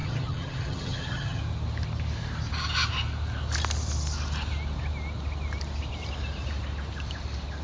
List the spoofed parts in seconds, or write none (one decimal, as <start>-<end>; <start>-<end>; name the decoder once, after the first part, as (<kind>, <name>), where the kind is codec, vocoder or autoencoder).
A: 0.0-1.4 (vocoder, HiFi-GAN)